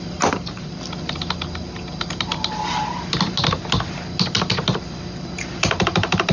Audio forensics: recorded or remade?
recorded